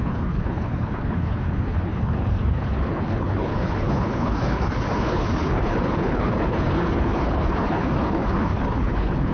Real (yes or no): no